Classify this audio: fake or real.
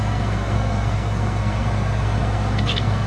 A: fake